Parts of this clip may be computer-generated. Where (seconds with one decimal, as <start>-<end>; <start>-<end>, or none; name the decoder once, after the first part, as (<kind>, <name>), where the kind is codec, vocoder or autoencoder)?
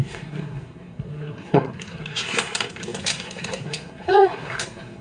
0.0-5.0 (codec, SNAC)